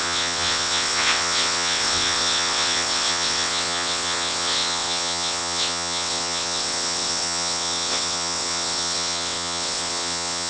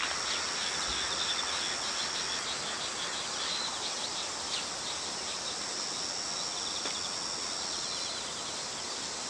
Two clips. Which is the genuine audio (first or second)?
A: second